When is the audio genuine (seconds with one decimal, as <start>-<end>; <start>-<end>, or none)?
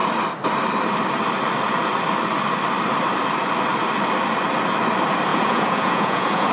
0.0-5.3